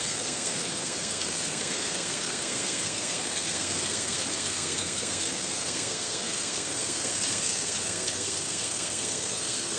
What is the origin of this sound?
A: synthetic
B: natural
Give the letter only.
A